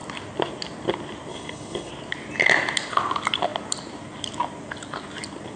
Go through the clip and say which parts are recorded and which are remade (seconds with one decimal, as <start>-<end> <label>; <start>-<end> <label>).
0.0-1.3 recorded; 1.3-1.9 remade; 1.9-5.6 recorded

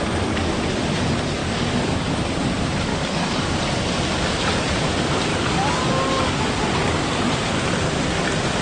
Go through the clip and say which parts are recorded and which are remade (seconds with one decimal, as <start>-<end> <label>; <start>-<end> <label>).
0.0-1.4 recorded; 1.4-2.3 remade; 2.3-2.9 recorded; 2.9-3.6 remade; 3.6-5.3 recorded; 5.3-6.4 remade; 6.4-8.6 recorded

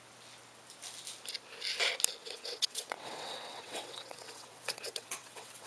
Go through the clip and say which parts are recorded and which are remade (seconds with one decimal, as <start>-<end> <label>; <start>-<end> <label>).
0.0-2.2 recorded; 2.2-5.7 remade

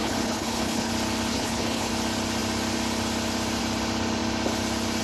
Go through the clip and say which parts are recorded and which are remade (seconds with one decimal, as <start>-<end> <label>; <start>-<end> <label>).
0.0-0.9 remade; 0.9-1.3 recorded; 1.3-1.9 remade; 1.9-5.0 recorded

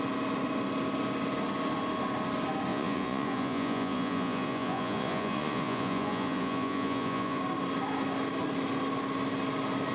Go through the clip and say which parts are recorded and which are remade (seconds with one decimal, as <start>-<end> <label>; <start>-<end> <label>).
0.0-2.7 recorded; 2.7-7.4 remade; 7.4-9.9 recorded